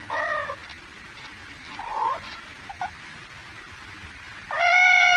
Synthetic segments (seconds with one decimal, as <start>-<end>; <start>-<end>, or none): 1.9-2.4